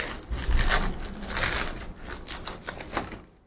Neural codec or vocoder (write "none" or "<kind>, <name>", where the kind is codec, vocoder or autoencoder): none